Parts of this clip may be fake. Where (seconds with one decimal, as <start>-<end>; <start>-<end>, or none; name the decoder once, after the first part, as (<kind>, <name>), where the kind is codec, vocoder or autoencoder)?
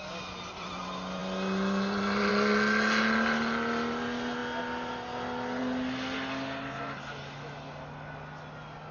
none